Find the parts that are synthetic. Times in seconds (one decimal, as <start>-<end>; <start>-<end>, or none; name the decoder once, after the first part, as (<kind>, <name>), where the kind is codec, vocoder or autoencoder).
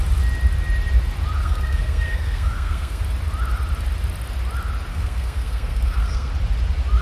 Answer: 1.4-3.0 (codec, SNAC); 4.9-6.3